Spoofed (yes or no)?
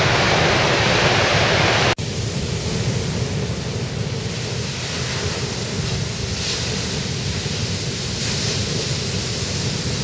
no